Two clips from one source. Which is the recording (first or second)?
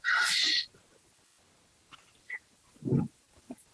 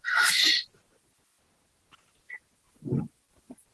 second